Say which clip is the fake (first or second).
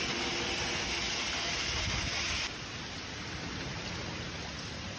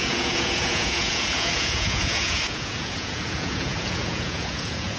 second